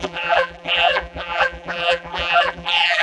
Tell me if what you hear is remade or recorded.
remade